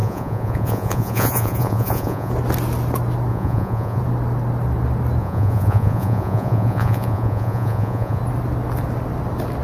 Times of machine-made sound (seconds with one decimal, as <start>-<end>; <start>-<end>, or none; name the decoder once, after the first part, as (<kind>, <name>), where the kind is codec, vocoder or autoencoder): 0.0-2.3 (vocoder, Vocos); 3.3-4.0; 5.2-8.2